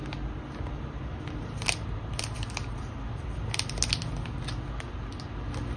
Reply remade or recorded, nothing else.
recorded